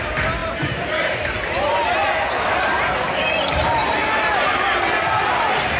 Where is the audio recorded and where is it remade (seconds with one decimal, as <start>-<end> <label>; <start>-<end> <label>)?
0.0-5.8 recorded